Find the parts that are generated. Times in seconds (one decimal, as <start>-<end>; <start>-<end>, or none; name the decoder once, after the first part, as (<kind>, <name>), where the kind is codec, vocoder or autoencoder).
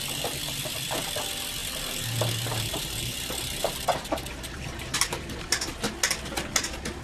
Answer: 4.0-4.6 (vocoder, BigVGAN v2)